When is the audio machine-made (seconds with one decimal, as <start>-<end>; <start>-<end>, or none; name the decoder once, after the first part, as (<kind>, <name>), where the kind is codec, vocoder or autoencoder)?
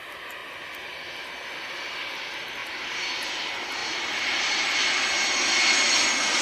none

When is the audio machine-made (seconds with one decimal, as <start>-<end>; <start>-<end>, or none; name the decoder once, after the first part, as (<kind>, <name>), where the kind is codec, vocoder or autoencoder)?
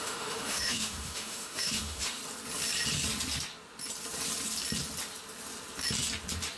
0.0-2.2 (autoencoder, DAC-VAE)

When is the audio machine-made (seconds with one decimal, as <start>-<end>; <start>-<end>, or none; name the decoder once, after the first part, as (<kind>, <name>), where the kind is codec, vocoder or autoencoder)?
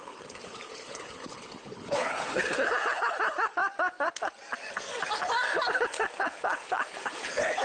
0.0-3.6 (codec, HILCodec); 5.8-7.6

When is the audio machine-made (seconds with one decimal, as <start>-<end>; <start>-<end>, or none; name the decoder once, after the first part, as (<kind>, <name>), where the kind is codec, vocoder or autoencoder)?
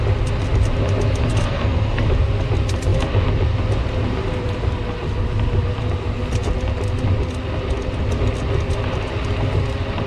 1.3-2.1 (codec, SNAC)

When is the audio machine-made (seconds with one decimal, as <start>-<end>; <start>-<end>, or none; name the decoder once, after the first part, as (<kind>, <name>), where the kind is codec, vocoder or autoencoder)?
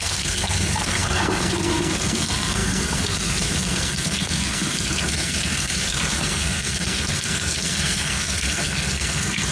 0.0-9.5 (codec, SNAC)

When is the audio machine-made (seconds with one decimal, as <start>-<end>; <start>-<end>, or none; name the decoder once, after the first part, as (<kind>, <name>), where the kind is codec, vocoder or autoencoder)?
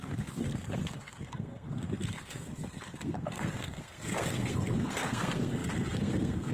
0.0-6.5 (codec, SNAC)